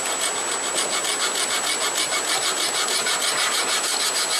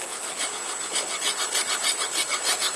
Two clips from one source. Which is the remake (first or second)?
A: second